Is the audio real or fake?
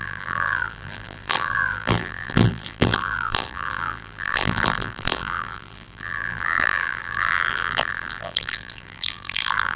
fake